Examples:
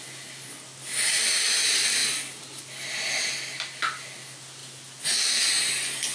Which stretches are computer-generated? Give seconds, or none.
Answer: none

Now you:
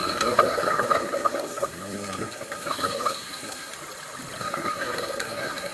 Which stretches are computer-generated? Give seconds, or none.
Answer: 0.0-3.7 (codec, SNAC); 4.4-5.7

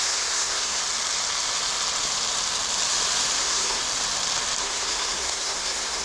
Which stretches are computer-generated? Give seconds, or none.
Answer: 0.0-0.8 (codec, SNAC); 3.4-3.8; 4.6-6.0

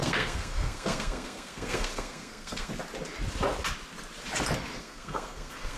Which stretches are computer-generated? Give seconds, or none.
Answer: 0.0-2.7 (codec, SNAC); 4.8-5.8